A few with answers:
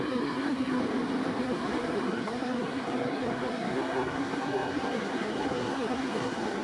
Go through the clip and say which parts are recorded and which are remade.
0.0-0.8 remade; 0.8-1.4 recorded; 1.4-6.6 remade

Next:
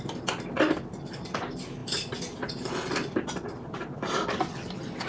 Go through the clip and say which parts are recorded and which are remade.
0.0-5.1 recorded

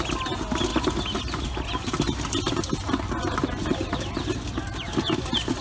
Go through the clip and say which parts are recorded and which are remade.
0.0-5.6 recorded